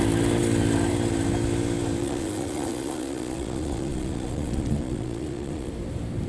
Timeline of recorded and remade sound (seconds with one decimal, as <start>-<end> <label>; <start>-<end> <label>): 0.0-2.0 recorded; 2.0-5.7 remade; 5.7-6.3 recorded